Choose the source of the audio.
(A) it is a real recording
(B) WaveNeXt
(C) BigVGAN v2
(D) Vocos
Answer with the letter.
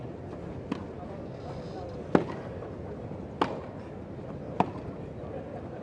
A